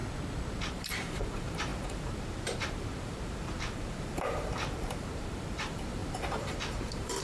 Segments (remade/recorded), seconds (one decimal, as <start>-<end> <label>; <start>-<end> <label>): 0.0-0.7 recorded; 0.7-7.2 remade